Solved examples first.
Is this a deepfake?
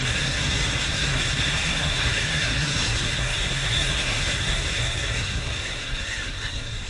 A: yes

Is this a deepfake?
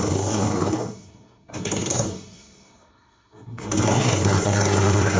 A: yes